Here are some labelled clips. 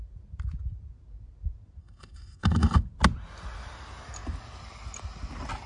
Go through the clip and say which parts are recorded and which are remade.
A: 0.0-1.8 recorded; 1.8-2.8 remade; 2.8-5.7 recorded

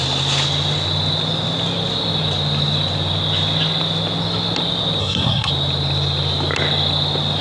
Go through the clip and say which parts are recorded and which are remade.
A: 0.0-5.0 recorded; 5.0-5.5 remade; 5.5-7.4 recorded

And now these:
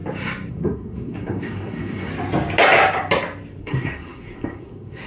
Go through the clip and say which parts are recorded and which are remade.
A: 0.0-0.5 recorded; 0.5-2.1 remade; 2.1-3.6 recorded; 3.6-5.1 remade

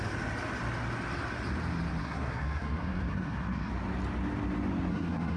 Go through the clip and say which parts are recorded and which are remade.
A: 0.0-2.0 recorded; 2.0-3.7 remade; 3.7-4.9 recorded; 4.9-5.4 remade